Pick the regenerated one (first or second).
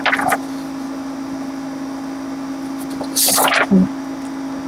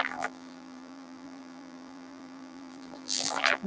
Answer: second